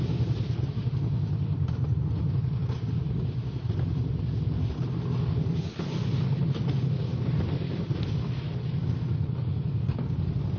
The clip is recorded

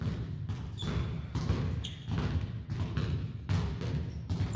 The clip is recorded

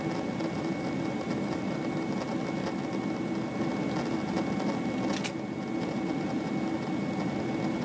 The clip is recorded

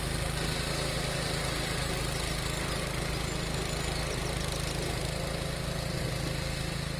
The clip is recorded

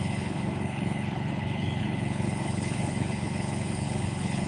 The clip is remade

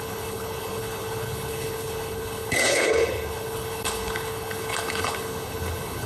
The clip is remade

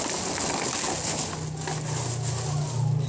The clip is recorded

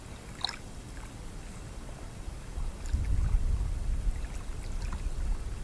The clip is recorded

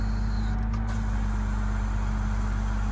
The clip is recorded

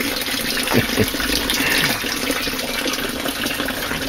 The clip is recorded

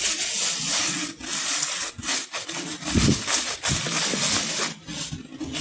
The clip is recorded